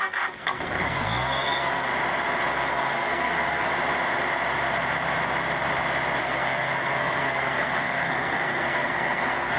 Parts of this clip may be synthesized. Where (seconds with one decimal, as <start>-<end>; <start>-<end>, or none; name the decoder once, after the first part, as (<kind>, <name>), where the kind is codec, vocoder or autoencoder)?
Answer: 0.0-1.9 (codec, SNAC); 2.5-3.7; 6.2-9.6